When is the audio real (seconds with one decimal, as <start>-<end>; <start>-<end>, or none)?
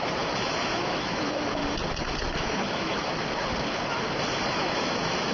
1.6-2.2; 3.2-4.4